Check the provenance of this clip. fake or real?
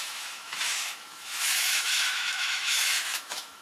fake